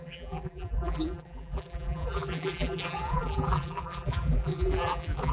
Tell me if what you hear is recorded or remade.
remade